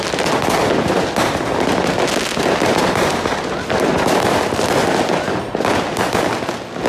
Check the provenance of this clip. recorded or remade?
recorded